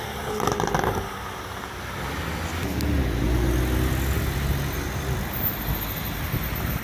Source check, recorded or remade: recorded